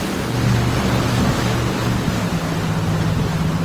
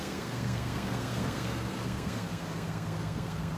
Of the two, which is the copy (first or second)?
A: second